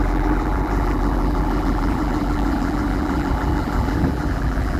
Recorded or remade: remade